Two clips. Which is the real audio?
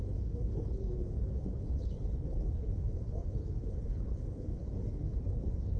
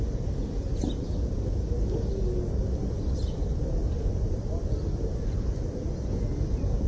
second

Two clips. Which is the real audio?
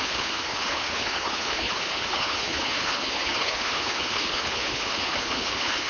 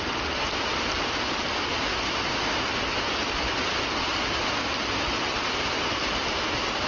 second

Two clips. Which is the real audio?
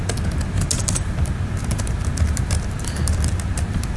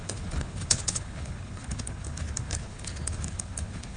first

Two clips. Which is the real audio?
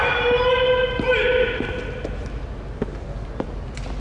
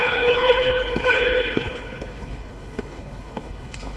first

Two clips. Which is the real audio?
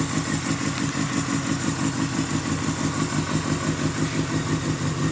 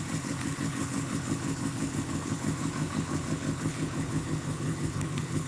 first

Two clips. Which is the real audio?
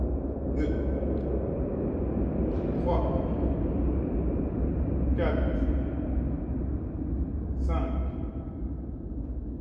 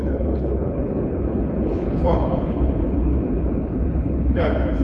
first